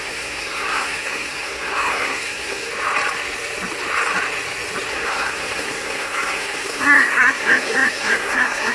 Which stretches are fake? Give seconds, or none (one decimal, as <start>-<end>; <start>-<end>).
0.0-2.7; 4.9-8.7